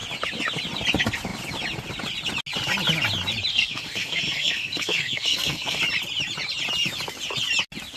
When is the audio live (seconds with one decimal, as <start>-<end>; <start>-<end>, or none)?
0.0-3.5; 5.8-8.0